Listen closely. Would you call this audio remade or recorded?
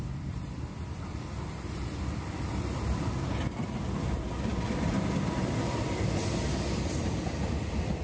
remade